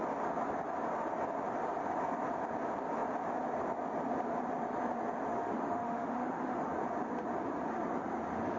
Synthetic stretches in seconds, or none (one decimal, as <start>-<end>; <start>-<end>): 5.3-6.7